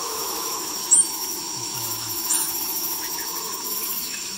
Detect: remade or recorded remade